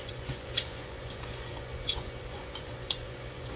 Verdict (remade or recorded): remade